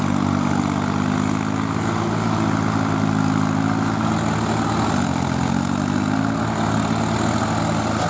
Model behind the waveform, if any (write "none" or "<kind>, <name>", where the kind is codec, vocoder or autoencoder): none